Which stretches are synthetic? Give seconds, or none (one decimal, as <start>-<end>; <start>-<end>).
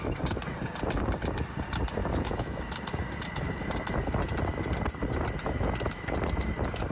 2.0-2.6